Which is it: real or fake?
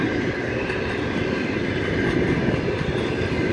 real